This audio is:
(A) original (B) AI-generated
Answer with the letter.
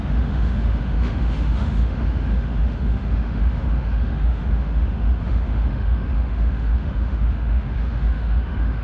B